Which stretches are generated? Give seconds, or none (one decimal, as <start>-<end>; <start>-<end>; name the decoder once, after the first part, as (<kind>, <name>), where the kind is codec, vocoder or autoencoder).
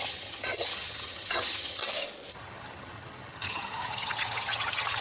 0.0-1.8 (vocoder, HiFi-GAN); 2.3-5.0